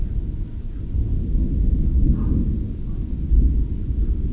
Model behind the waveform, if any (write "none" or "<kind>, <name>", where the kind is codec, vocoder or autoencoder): none